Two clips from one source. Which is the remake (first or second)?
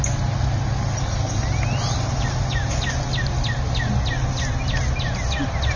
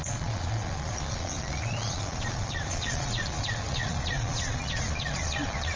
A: second